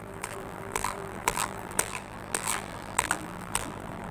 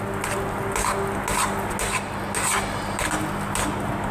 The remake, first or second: first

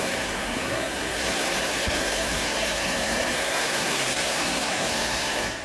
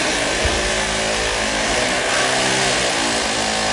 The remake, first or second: first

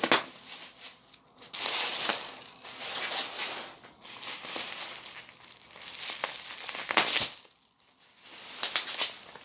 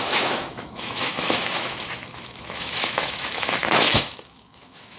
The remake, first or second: second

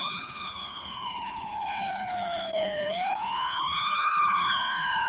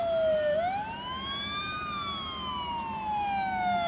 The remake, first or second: first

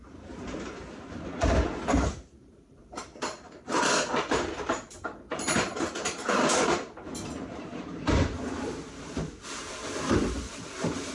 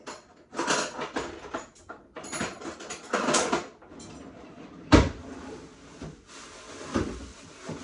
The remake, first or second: first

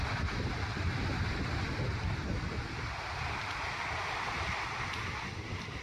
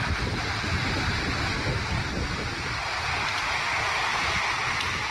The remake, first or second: first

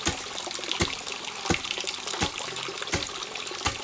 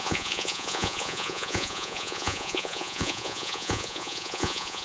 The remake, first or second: second